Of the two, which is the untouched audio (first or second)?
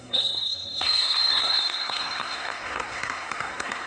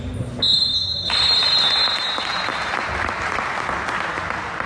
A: second